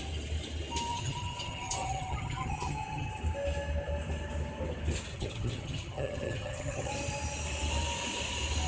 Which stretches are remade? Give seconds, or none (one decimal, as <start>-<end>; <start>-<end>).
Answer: 0.9-3.1; 5.1-6.9